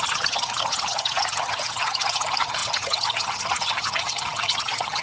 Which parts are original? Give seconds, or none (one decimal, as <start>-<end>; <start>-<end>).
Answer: none